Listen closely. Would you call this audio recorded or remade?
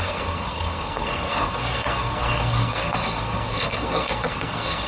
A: remade